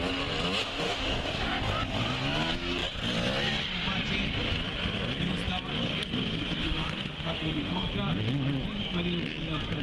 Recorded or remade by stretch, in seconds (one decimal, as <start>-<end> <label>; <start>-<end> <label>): 0.0-0.6 recorded; 0.6-1.6 remade; 1.6-6.6 recorded; 6.6-7.9 remade; 7.9-9.8 recorded